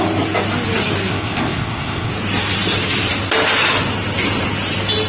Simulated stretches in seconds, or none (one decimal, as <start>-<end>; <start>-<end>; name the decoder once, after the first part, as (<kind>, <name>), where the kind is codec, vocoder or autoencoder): 1.1-2.1 (codec, ZipCodec)